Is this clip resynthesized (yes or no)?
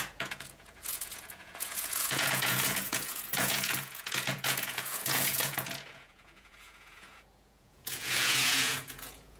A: yes